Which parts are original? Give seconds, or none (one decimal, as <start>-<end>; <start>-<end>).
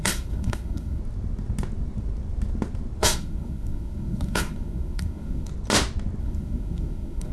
1.0-3.0; 5.5-6.2